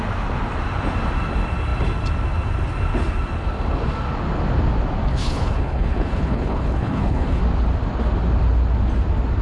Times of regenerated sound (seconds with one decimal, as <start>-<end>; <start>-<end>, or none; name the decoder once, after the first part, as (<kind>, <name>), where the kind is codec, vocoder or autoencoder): 5.1-7.4 (codec, HILCodec)